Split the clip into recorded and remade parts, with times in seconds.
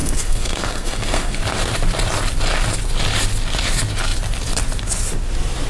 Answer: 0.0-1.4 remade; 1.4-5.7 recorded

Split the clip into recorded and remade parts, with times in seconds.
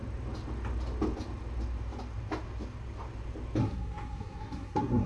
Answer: 0.0-3.6 recorded; 3.6-5.1 remade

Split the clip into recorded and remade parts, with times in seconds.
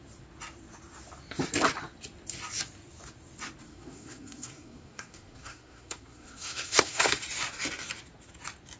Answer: 0.0-3.7 recorded; 3.7-7.0 remade; 7.0-8.8 recorded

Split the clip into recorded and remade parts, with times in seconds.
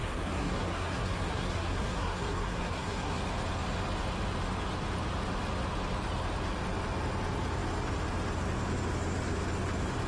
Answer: 0.0-3.2 remade; 3.2-10.1 recorded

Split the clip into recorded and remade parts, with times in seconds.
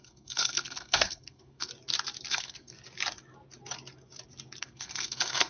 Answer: 0.0-1.7 remade; 1.7-2.3 recorded; 2.3-2.7 remade; 2.7-4.6 recorded; 4.6-5.5 remade